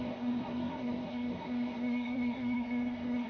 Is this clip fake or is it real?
fake